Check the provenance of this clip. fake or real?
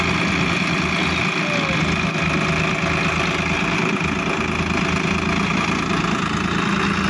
real